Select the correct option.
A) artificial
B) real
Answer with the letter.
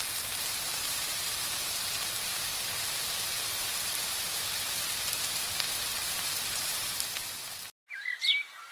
A